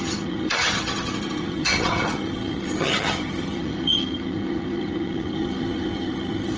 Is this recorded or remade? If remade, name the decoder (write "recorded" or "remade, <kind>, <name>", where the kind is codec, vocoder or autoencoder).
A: remade, vocoder, HiFi-GAN